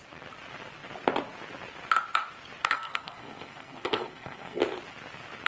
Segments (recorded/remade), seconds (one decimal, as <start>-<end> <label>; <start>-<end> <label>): 0.0-2.6 recorded; 2.6-4.6 remade; 4.6-5.5 recorded